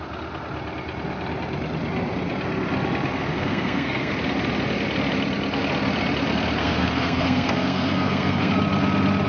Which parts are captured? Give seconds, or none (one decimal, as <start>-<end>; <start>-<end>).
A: 0.0-3.3; 4.1-6.6; 8.5-9.3